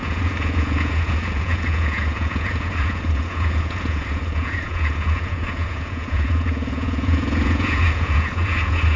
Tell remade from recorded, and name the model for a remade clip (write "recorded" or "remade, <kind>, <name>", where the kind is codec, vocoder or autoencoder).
remade, vocoder, Vocos